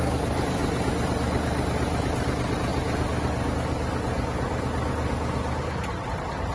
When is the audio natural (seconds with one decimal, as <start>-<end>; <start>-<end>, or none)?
0.6-2.1; 2.7-5.9